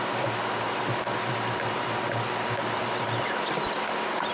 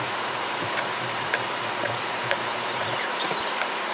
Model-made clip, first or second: second